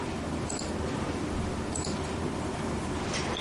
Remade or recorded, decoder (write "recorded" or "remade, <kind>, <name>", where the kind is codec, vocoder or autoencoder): recorded